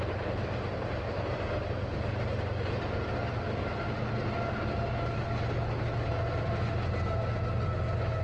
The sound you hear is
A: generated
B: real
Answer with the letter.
B